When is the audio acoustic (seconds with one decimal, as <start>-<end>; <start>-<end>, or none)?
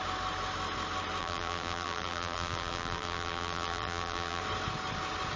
0.0-1.2; 4.4-5.4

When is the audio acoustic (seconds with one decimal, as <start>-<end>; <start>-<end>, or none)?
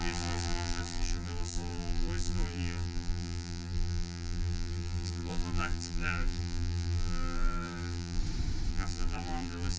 8.2-8.7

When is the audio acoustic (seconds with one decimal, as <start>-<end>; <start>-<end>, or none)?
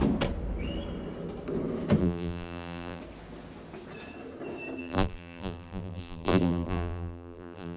0.0-2.0; 3.0-4.8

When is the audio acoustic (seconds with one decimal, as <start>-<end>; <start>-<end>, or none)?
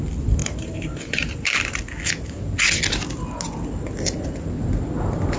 0.0-0.4; 1.8-5.4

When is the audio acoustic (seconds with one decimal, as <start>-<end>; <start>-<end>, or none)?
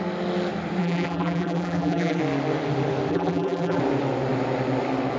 0.0-0.8; 2.2-3.1; 3.8-5.2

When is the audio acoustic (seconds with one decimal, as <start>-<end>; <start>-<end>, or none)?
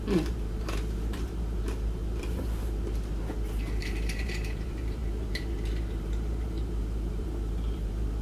none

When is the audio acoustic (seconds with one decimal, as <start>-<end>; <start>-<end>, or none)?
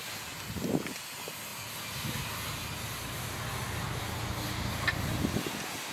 0.0-5.9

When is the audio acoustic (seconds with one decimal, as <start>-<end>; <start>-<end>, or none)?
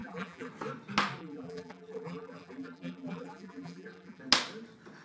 0.5-1.2; 4.2-5.0